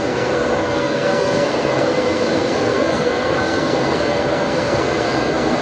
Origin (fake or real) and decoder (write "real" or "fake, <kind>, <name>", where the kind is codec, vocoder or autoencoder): fake, codec, SNAC